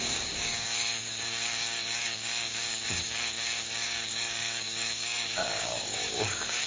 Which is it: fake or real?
fake